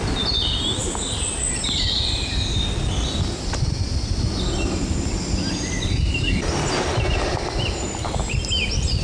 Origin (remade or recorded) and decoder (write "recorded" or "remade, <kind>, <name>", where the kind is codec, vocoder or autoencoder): recorded